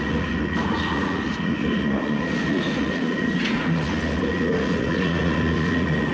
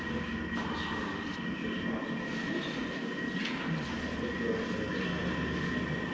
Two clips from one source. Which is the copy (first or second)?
first